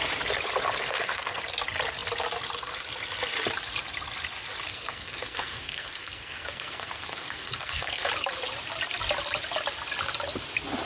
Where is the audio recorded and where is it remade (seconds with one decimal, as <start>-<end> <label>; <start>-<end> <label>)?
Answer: 0.0-0.8 recorded; 0.8-1.4 remade; 1.4-4.7 recorded; 4.7-8.1 remade; 8.1-10.9 recorded